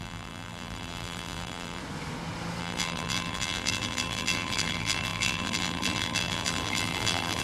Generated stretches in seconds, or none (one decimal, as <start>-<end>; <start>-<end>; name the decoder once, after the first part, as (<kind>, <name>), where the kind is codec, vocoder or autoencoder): 0.0-1.8 (vocoder, BigVGAN v2); 2.6-7.4